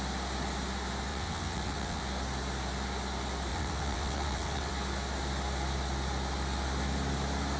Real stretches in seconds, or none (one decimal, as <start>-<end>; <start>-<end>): 0.0-1.1; 2.0-3.5; 4.7-7.6